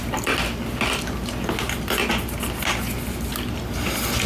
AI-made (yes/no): no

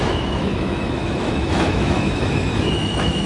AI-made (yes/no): yes